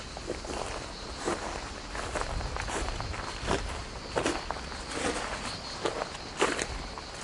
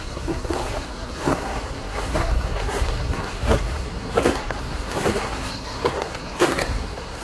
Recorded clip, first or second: first